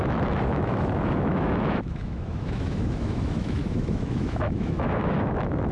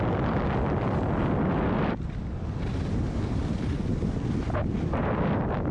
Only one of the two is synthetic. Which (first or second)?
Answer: first